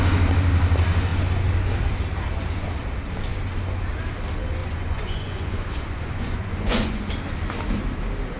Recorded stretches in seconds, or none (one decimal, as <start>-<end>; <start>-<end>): 0.0-4.6; 7.1-8.4